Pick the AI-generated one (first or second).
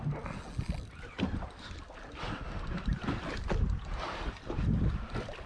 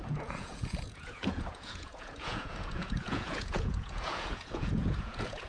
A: second